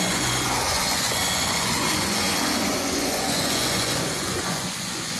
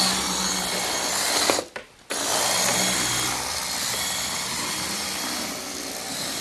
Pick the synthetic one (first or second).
first